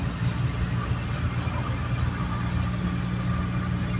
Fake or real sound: real